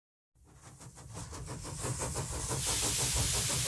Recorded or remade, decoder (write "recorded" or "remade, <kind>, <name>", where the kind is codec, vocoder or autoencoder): recorded